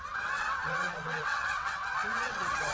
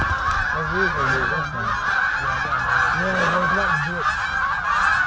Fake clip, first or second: first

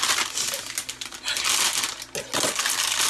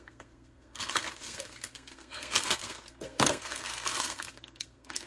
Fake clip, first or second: second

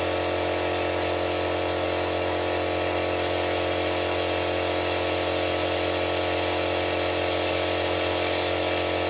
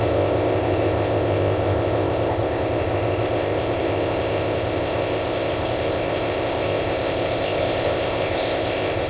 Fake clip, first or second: second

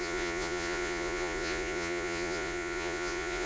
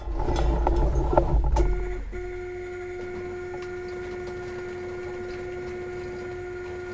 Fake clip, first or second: first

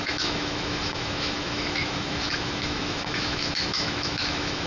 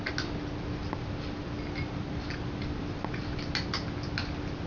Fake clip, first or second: first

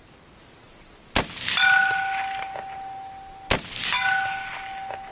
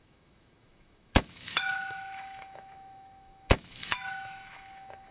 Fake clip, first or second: second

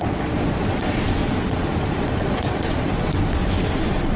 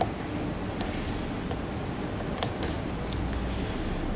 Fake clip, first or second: first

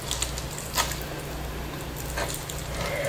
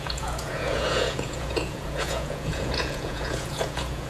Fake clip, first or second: second